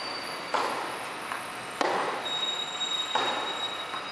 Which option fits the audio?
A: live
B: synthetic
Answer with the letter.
A